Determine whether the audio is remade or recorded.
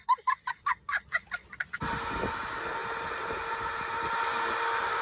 recorded